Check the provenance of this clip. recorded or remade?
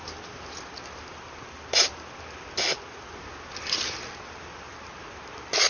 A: recorded